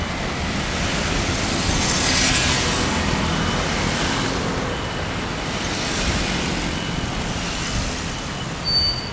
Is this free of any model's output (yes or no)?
yes